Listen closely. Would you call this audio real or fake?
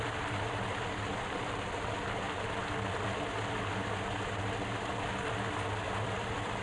real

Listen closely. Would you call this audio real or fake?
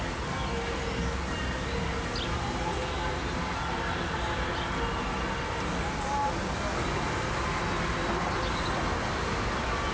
real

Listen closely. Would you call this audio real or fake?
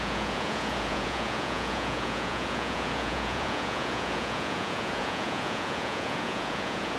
fake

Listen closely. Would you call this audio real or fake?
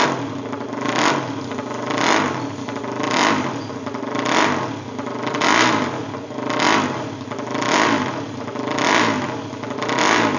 real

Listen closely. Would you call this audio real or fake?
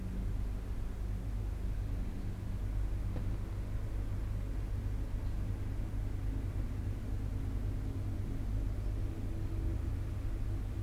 real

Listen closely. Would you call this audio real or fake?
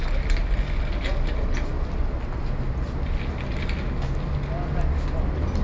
real